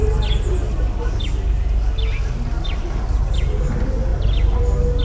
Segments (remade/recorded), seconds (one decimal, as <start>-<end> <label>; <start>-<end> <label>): 0.0-4.1 recorded; 4.1-4.6 remade; 4.6-5.0 recorded